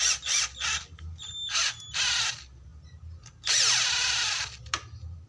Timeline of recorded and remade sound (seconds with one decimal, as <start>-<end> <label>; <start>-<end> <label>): 0.0-5.3 recorded